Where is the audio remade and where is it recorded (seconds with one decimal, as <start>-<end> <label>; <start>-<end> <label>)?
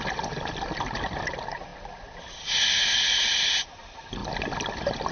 0.0-5.1 recorded